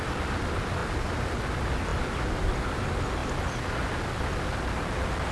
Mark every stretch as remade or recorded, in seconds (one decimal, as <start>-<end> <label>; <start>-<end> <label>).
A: 0.0-5.3 recorded